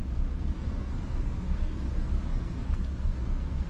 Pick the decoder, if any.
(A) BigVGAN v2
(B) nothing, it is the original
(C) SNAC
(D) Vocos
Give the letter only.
C